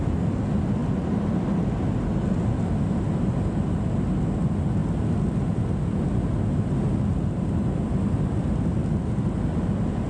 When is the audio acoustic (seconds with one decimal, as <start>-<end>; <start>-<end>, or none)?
0.0-10.1